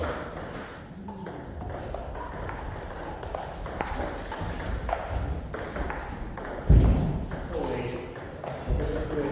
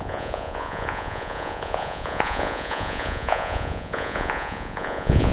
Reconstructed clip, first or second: second